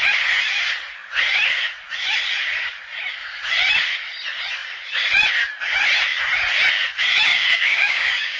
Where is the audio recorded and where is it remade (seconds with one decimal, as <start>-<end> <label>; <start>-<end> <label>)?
0.0-7.3 recorded; 7.3-8.4 remade